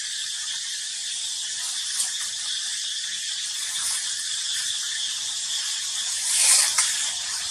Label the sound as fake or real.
fake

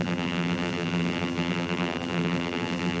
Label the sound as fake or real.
fake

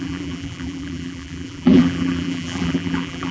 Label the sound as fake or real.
fake